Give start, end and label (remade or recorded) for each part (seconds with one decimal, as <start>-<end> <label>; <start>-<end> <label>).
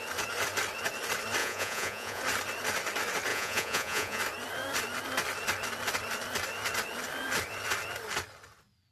0.0-1.4 recorded; 1.4-2.2 remade; 2.2-3.3 recorded; 3.3-4.2 remade; 4.2-8.9 recorded